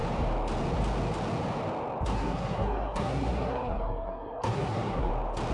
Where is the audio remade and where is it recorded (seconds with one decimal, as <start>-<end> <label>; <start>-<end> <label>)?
0.0-2.1 recorded; 2.1-5.1 remade; 5.1-5.5 recorded